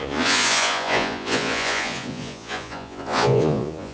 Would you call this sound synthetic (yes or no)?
yes